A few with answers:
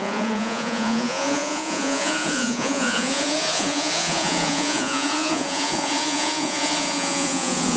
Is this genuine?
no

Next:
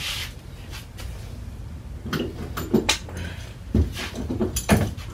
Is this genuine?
yes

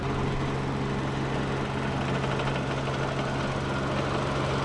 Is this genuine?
yes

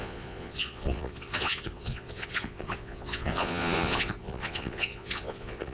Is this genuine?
no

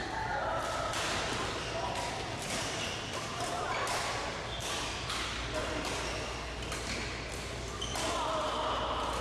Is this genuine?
yes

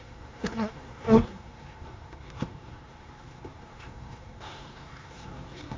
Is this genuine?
no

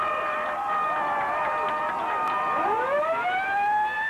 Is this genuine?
yes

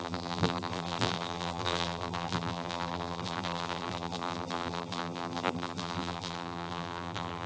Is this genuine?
no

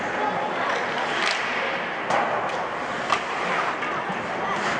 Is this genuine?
yes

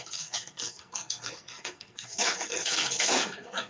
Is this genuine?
no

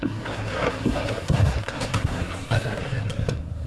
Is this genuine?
no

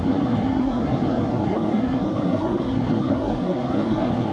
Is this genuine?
no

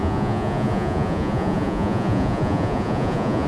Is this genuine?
no